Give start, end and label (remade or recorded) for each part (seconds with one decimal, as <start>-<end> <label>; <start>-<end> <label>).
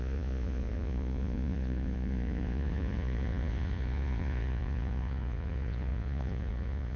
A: 0.0-7.0 remade